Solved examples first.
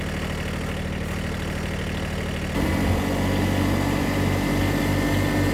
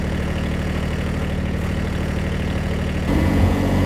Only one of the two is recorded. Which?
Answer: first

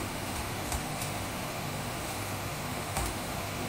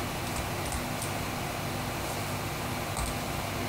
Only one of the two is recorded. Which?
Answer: second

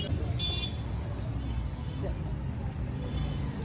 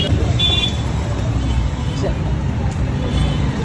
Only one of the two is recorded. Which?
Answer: first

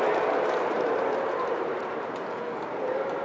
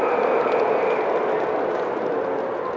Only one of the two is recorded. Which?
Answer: second